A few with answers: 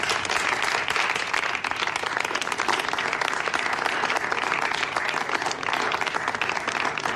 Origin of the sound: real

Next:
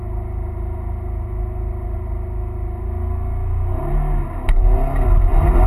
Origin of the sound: real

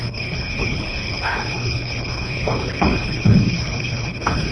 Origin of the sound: fake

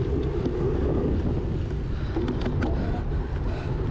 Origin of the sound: real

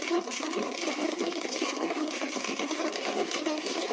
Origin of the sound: fake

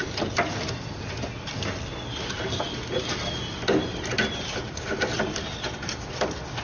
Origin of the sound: real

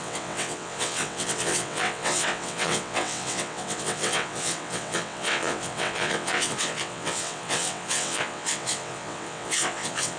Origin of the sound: fake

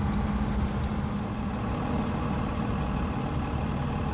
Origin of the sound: real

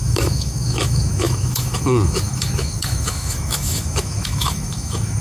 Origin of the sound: fake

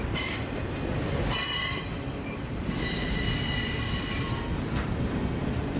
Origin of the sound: fake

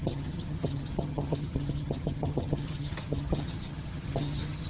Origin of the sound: fake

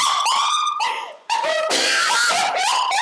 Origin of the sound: fake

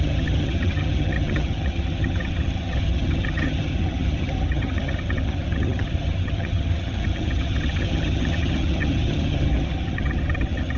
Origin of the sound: fake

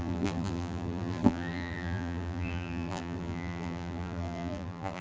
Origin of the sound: fake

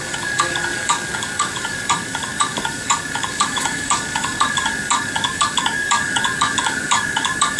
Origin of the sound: fake